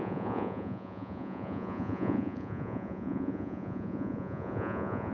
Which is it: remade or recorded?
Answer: remade